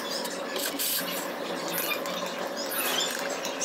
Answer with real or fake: real